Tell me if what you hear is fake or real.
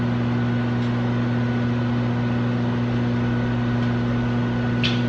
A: real